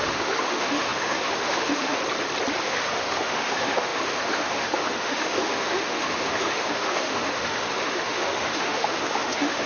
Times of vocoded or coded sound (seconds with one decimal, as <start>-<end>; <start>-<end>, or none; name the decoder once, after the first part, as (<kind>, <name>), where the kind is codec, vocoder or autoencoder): 0.0-2.0 (autoencoder, DAC-VAE); 2.6-9.7